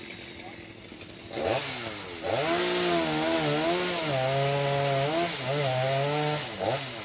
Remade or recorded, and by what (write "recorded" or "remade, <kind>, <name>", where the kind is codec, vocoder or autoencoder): recorded